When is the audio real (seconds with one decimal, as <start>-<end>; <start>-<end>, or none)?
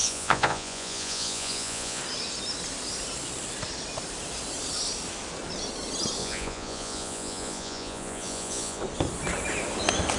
2.0-6.2; 8.8-10.2